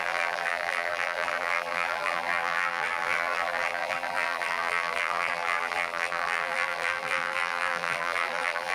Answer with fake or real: fake